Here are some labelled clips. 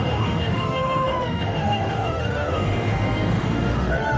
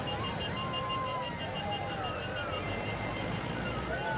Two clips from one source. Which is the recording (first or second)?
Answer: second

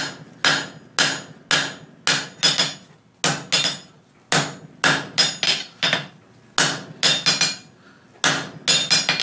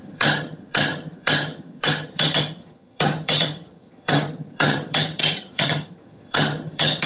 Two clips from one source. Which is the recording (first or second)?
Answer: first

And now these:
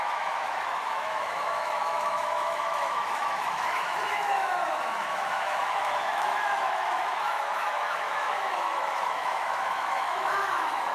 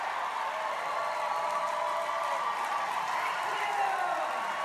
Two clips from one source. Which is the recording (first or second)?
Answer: second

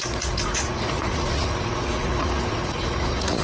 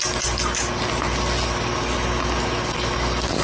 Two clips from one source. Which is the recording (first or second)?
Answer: second